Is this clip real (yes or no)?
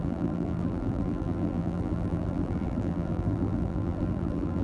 no